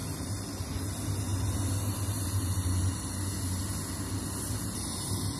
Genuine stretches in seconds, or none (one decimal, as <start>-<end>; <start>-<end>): 0.0-5.4